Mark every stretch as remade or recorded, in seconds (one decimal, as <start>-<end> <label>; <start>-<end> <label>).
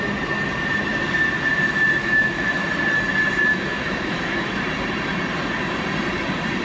0.0-2.0 recorded; 2.0-2.7 remade; 2.7-3.5 recorded; 3.5-4.6 remade; 4.6-6.6 recorded